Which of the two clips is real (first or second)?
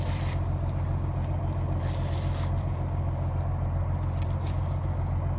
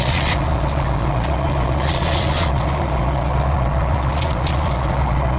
first